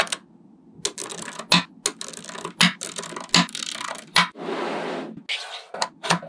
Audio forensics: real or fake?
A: real